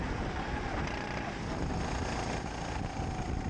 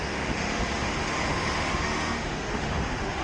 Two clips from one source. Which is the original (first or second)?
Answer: first